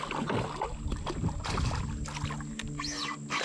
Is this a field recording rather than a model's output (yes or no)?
yes